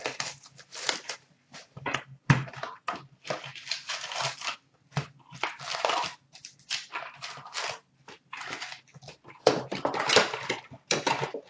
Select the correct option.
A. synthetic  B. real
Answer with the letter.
B